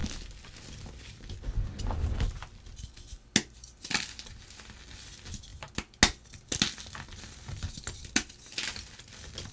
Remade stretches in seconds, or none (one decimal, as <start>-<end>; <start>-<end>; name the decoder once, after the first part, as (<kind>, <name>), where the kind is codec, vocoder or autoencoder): none